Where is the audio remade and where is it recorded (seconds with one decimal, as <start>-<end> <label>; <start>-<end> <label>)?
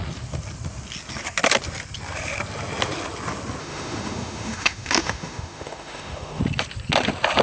0.0-3.6 recorded; 3.6-6.4 remade; 6.4-7.4 recorded